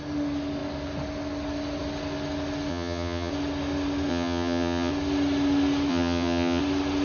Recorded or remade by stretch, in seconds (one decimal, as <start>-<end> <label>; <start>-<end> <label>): 0.0-2.7 recorded; 2.7-3.3 remade; 3.3-4.1 recorded; 4.1-4.9 remade; 4.9-5.9 recorded; 5.9-6.6 remade; 6.6-7.0 recorded